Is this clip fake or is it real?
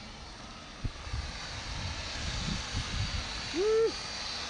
real